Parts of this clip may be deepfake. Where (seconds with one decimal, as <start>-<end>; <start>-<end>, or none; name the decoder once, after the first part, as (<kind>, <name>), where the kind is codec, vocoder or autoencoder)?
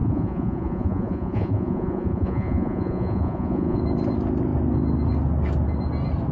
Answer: 0.0-3.8 (vocoder, Vocos)